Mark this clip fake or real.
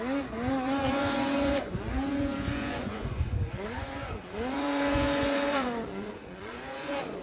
fake